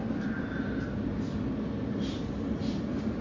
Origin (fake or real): real